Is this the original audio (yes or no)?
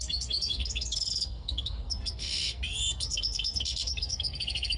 no